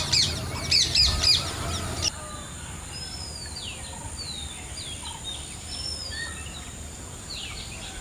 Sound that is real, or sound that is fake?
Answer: real